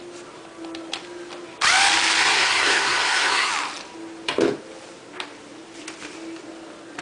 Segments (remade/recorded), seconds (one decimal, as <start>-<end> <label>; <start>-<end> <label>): 0.0-2.2 recorded; 2.2-3.5 remade; 3.5-7.0 recorded